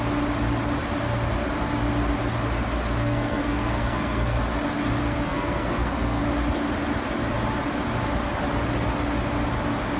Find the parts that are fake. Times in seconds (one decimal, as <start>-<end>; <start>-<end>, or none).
3.0-4.4; 5.0-6.2